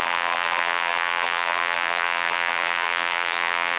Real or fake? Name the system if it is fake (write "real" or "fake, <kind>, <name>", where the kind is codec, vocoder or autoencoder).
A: fake, vocoder, BigVGAN v2